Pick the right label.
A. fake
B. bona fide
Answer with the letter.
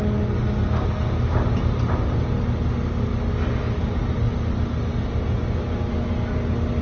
B